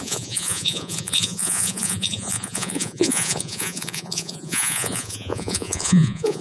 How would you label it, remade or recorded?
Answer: remade